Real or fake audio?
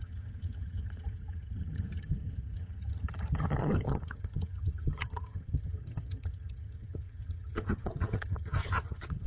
fake